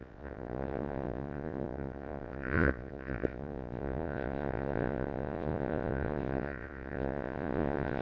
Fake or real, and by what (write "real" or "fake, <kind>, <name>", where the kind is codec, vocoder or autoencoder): fake, vocoder, Vocos